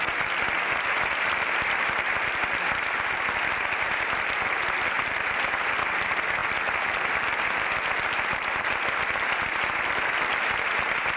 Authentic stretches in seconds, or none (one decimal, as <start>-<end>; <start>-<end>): 0.0-11.2